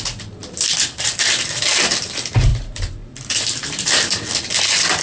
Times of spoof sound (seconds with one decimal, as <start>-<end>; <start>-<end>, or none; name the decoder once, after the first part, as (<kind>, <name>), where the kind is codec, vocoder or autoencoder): 0.0-0.4 (vocoder, BigVGAN v2); 1.0-5.0